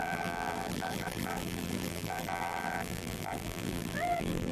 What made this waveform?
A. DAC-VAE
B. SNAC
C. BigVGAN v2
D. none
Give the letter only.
C